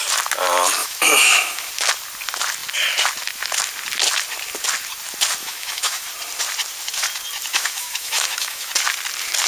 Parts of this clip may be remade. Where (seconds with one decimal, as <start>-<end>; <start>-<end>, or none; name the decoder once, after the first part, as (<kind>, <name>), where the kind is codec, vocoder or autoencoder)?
0.8-1.7 (autoencoder, DAC-VAE); 5.4-6.1; 7.5-8.7